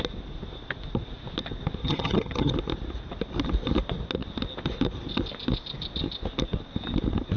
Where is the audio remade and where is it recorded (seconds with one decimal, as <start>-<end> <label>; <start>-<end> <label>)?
0.0-1.8 recorded; 1.8-2.5 remade; 2.5-7.4 recorded